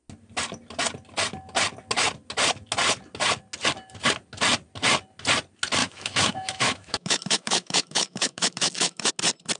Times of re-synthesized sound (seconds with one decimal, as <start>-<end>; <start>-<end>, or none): 5.8-9.1